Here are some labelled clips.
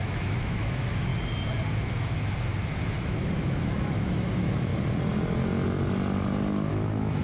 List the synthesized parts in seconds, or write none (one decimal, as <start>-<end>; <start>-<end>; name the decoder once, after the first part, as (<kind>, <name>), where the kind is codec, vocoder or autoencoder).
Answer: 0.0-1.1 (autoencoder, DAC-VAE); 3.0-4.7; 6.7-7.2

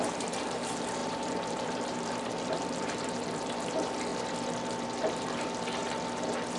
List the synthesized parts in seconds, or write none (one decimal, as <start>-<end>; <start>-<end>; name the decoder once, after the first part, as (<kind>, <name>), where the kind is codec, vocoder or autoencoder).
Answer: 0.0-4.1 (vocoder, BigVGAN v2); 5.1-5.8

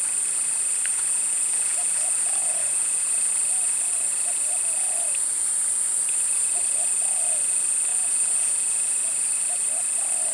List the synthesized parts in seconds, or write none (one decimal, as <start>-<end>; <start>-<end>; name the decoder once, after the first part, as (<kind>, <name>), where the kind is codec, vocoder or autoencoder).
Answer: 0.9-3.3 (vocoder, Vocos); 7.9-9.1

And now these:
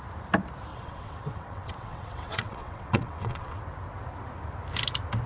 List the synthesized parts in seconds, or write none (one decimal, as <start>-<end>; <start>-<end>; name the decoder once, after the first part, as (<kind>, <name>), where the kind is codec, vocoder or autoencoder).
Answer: 0.7-3.6 (vocoder, WaveNeXt)

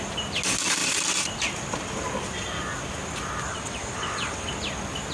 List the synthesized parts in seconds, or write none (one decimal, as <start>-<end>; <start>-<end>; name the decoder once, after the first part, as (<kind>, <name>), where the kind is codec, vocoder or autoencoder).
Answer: 3.5-4.5 (vocoder, WaveNeXt)

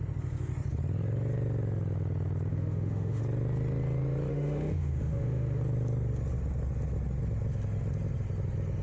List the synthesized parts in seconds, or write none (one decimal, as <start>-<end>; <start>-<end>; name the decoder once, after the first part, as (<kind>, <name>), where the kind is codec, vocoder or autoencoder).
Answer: 2.5-3.2 (autoencoder, DAC-VAE); 4.3-5.6